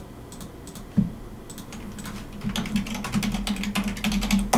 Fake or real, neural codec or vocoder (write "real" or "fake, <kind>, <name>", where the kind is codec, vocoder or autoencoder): real